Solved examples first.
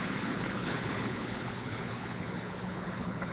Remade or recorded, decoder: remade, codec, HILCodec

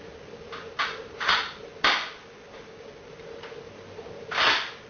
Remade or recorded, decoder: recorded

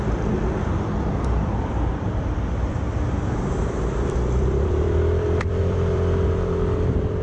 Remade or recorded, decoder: remade, vocoder, BigVGAN v2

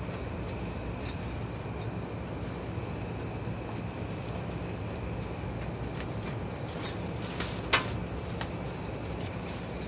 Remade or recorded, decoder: recorded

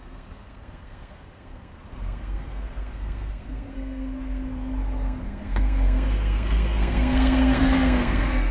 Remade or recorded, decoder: remade, codec, SNAC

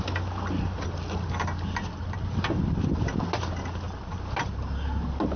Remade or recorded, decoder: recorded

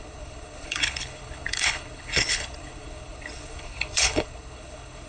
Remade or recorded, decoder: remade, codec, HILCodec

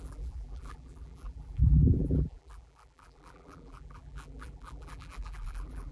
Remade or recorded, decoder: remade, vocoder, BigVGAN v2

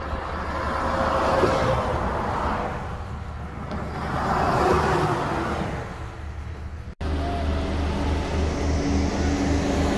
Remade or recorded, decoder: recorded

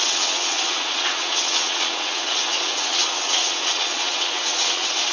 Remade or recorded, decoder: remade, vocoder, WaveNeXt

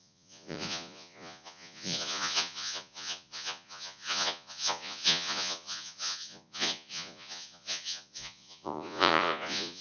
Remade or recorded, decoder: remade, vocoder, Vocos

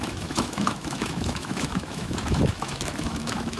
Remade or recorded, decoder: remade, autoencoder, DAC-VAE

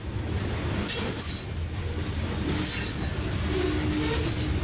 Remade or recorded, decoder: recorded